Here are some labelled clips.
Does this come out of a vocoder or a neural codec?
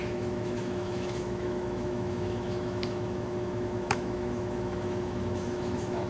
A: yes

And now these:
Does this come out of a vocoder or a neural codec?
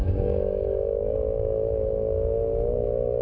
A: yes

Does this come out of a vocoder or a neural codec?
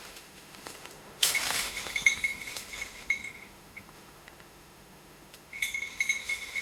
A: yes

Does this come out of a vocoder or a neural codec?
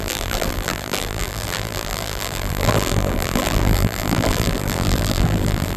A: yes